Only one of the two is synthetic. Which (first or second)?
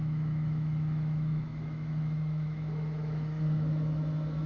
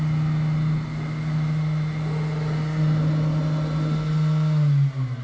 first